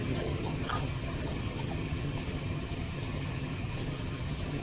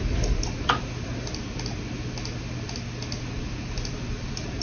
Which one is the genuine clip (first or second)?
second